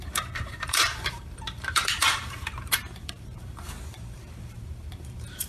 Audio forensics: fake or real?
fake